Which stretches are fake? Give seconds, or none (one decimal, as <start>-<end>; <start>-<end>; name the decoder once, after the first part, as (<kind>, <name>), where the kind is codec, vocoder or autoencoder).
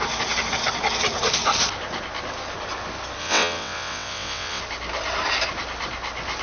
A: 3.2-4.6 (vocoder, WaveNeXt)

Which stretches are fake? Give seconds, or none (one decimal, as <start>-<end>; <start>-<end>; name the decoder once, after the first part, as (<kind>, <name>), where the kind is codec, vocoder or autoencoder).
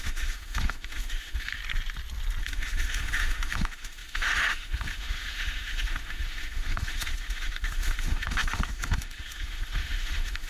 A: 0.0-1.6 (autoencoder, DAC-VAE); 2.4-10.5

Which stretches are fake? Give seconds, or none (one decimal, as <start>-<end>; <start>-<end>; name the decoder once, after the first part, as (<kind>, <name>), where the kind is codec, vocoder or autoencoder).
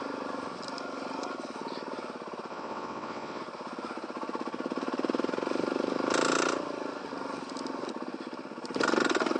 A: 2.5-3.4 (vocoder, WaveNeXt)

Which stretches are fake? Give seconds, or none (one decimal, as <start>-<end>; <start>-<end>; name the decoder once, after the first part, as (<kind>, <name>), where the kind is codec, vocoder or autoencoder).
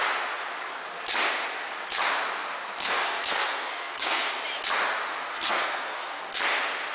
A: 2.8-4.4 (codec, SNAC); 5.3-6.2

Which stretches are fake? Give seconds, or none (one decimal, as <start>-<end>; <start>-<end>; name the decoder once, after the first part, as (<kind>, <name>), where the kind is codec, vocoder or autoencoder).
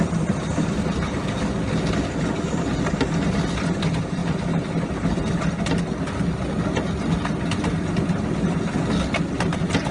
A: none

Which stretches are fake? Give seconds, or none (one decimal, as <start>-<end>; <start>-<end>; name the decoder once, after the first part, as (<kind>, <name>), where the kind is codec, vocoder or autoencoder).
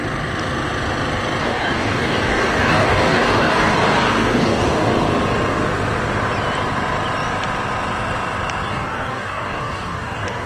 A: 1.4-4.9 (codec, DAC); 8.7-10.5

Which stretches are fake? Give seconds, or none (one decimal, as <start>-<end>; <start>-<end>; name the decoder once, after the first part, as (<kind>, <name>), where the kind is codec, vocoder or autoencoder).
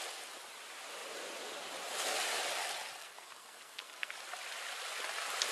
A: 3.0-4.1 (codec, SNAC)